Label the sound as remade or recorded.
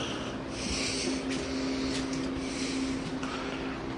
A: recorded